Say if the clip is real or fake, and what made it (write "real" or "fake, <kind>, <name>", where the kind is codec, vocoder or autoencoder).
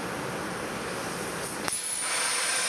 real